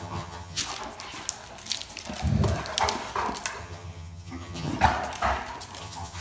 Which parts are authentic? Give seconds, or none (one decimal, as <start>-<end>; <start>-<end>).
0.6-3.6; 4.7-5.8